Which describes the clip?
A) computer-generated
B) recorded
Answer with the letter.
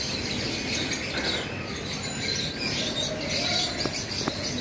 B